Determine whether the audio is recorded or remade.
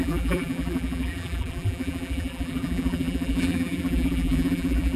remade